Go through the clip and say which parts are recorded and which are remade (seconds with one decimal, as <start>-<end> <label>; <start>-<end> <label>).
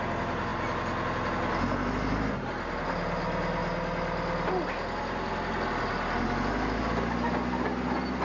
0.0-8.2 recorded